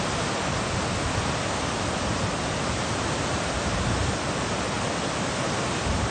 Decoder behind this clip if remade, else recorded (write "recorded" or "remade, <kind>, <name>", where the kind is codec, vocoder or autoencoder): recorded